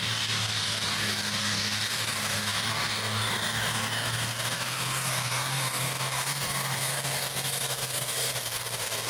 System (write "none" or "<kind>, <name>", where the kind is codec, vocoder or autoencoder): codec, DAC